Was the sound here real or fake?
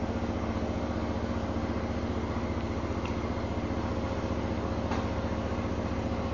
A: real